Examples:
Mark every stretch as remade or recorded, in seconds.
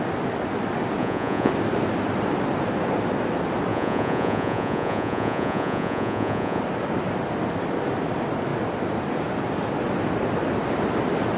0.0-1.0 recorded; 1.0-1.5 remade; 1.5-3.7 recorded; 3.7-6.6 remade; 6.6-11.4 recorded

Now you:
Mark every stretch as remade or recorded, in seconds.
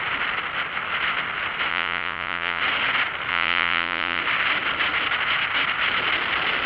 0.0-1.7 recorded; 1.7-2.6 remade; 2.6-3.3 recorded; 3.3-4.2 remade; 4.2-6.7 recorded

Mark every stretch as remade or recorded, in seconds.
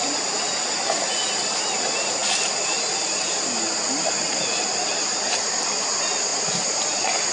0.0-7.3 recorded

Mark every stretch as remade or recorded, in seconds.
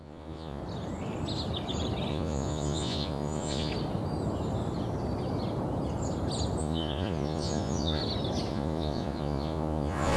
0.0-0.6 remade; 0.6-2.1 recorded; 2.1-3.7 remade; 3.7-6.6 recorded; 6.6-8.0 remade; 8.0-8.5 recorded; 8.5-10.2 remade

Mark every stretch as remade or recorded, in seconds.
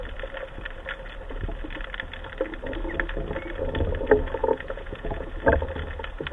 0.0-4.4 recorded; 4.4-5.3 remade; 5.3-6.3 recorded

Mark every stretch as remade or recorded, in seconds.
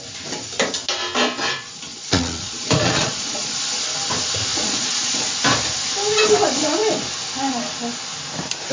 0.0-1.9 recorded; 1.9-3.5 remade; 3.5-4.5 recorded; 4.5-5.2 remade; 5.2-8.7 recorded